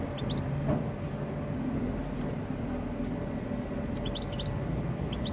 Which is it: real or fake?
real